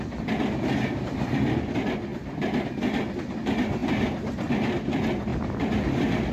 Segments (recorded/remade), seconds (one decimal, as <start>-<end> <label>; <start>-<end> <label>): 0.0-6.3 recorded